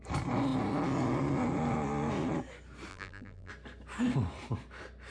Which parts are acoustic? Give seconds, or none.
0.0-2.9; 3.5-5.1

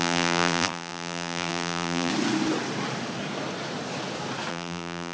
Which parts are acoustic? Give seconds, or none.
2.1-4.5

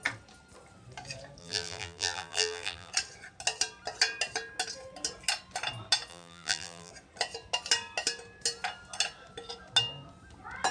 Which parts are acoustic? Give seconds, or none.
0.0-1.4; 2.9-6.1; 6.9-10.7

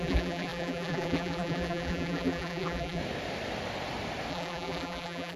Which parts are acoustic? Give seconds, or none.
3.0-4.3

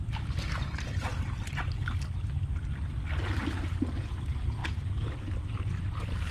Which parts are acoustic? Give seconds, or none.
1.1-4.1

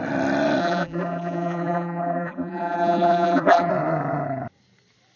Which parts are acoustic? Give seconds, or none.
0.0-0.6; 3.7-5.2

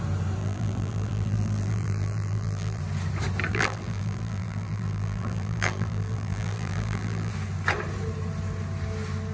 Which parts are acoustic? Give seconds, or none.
0.0-0.4; 2.8-3.5; 7.3-9.3

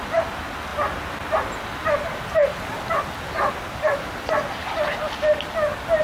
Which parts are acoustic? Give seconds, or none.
0.0-6.0